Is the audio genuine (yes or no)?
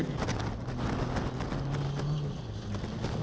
yes